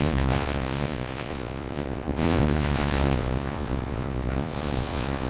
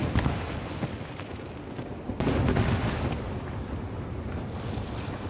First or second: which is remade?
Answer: first